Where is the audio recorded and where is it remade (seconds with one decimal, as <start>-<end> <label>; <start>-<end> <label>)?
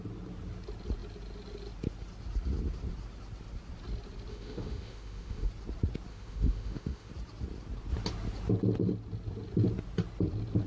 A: 0.0-4.3 recorded; 4.3-5.5 remade; 5.5-6.1 recorded; 6.1-7.1 remade; 7.1-10.7 recorded